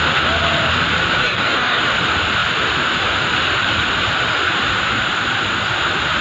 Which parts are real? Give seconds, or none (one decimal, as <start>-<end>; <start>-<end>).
0.0-1.2; 1.8-6.2